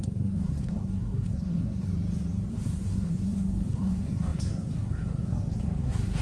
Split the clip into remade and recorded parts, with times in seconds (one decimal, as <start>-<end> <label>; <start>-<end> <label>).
0.0-1.9 remade; 1.9-2.5 recorded; 2.5-6.2 remade